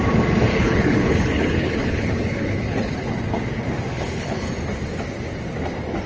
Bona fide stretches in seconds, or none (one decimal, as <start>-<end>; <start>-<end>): 0.0-0.5; 3.2-3.9; 4.5-6.1